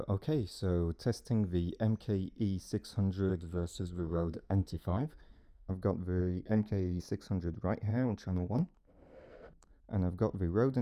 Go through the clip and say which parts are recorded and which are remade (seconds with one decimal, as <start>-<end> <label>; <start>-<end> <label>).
0.0-3.3 recorded; 3.3-5.7 remade; 5.7-6.2 recorded; 6.2-7.0 remade; 7.0-7.9 recorded; 7.9-9.8 remade; 9.8-10.8 recorded